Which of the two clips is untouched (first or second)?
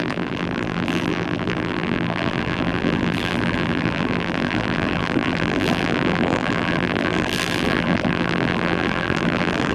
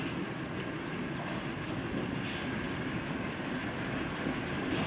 second